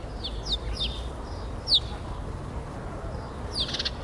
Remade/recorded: recorded